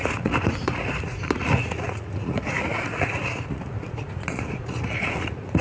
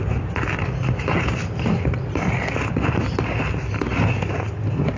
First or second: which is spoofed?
first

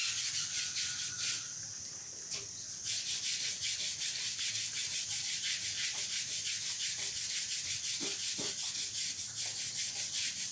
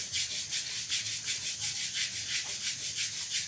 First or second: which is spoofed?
first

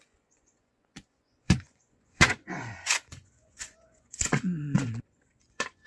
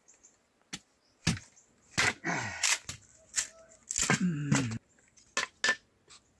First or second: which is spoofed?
first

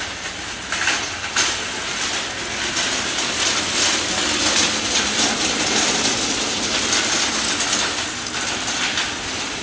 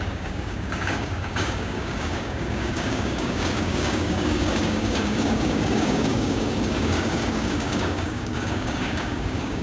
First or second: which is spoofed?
second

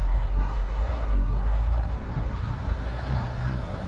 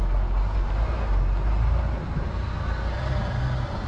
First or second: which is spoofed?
first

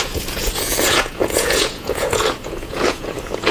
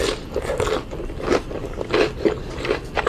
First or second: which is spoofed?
first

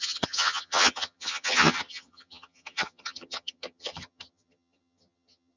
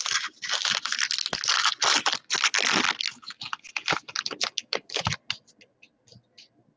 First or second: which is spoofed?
first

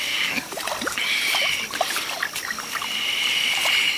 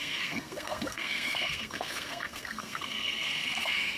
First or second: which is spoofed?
second